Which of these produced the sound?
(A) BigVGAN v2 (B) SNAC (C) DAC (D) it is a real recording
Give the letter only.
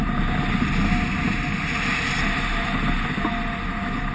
D